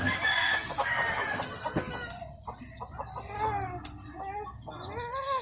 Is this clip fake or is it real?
real